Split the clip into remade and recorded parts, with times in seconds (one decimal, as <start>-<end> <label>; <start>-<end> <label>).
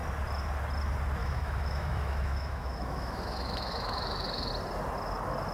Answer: 0.0-1.2 recorded; 1.2-4.5 remade; 4.5-5.5 recorded